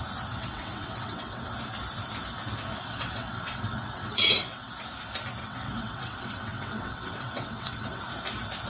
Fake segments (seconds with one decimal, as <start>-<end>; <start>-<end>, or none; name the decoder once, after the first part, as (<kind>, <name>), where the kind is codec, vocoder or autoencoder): 0.4-1.5 (vocoder, WaveNeXt); 2.8-4.7; 5.4-8.0